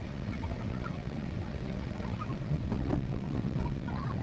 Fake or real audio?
fake